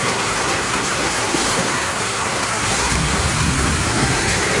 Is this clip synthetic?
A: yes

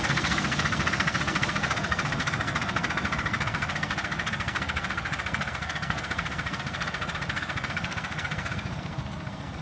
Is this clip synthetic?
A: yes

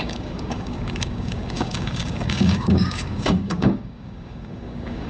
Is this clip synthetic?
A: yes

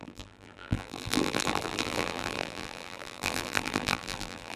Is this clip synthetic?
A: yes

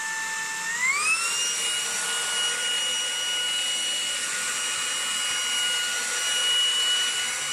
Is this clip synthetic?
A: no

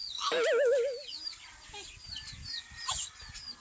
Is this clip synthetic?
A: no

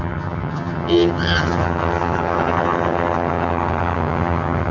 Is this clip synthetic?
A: yes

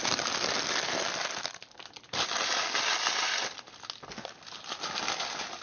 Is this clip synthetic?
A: no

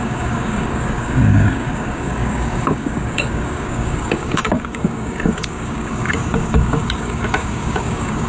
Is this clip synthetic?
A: yes